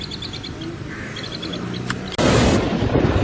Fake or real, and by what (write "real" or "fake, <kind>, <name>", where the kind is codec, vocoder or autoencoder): real